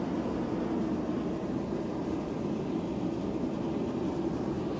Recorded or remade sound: recorded